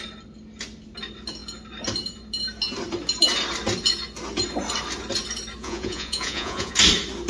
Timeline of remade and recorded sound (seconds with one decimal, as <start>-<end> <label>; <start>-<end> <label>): 0.0-5.6 recorded; 5.6-6.7 remade; 6.7-7.3 recorded